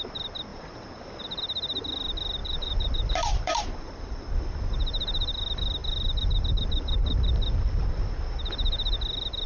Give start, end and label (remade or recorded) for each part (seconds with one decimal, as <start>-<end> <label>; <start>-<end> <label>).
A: 0.0-0.5 recorded; 0.5-1.4 remade; 1.4-2.4 recorded; 2.4-3.6 remade; 3.6-9.5 recorded